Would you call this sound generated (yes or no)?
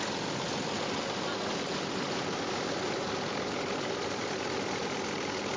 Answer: no